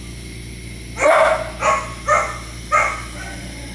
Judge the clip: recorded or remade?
recorded